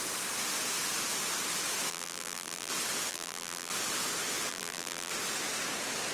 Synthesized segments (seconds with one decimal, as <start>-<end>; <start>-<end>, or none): 1.9-2.7; 3.1-3.7; 4.5-5.1

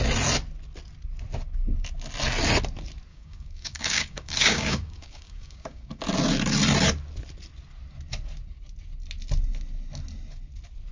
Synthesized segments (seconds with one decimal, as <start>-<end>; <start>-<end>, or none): 3.1-6.0

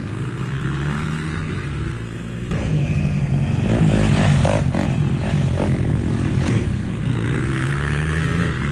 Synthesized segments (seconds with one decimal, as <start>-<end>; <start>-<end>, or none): 0.0-3.3; 6.5-8.7

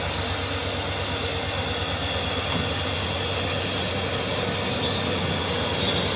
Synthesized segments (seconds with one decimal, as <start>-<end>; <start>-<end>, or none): none

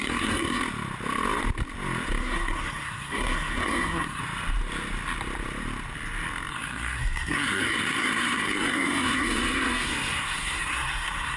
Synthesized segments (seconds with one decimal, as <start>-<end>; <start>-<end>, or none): 0.0-0.6; 2.2-4.2; 6.5-11.4

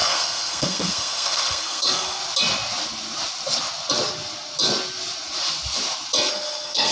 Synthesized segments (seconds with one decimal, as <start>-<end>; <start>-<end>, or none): 0.0-2.2; 6.3-6.9

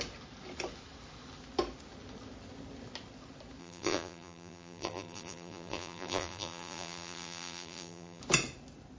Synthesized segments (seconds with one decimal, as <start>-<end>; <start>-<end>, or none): 3.6-8.2